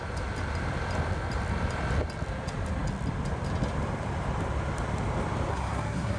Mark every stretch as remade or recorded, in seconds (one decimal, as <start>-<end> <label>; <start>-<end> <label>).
0.0-5.5 recorded; 5.5-6.2 remade